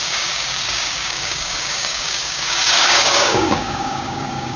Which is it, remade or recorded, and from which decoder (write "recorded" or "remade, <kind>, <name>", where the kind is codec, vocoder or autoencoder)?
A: remade, codec, DAC